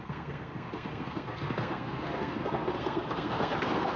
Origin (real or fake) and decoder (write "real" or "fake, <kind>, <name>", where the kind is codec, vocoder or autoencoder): fake, codec, SNAC